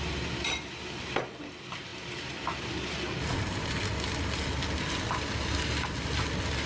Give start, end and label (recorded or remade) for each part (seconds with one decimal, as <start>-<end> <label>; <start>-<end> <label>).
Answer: 0.0-6.7 recorded